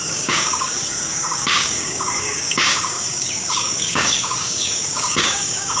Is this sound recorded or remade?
remade